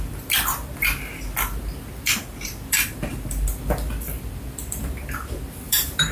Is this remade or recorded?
remade